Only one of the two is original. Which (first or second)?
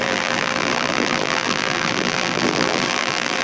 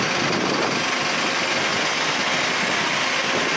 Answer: second